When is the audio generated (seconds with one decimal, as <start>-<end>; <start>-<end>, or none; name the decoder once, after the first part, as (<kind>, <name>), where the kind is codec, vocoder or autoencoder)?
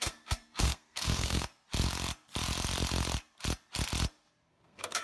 0.0-1.5 (codec, SNAC); 4.5-5.0